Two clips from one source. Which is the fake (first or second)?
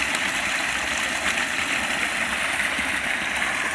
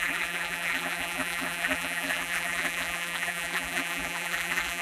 second